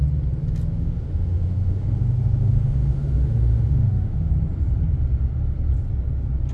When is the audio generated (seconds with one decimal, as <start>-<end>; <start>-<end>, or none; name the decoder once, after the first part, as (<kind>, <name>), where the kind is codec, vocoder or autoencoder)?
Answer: 0.7-4.3 (autoencoder, DAC-VAE)